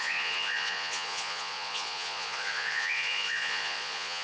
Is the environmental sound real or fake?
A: fake